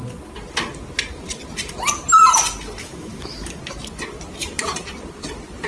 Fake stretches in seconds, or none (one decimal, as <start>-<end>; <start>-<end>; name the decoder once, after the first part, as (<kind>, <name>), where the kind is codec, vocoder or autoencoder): 2.8-3.6 (autoencoder, DAC-VAE)